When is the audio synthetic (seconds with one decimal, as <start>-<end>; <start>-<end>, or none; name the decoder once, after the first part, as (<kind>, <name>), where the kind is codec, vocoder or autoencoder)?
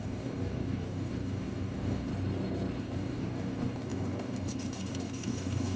0.0-2.1 (codec, DAC); 2.8-5.8